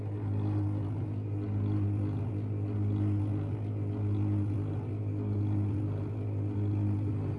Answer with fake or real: real